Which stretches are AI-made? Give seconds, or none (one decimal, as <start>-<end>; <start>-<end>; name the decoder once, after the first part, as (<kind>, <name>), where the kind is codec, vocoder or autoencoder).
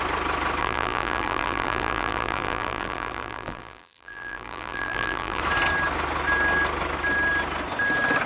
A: 0.6-5.4 (vocoder, BigVGAN v2)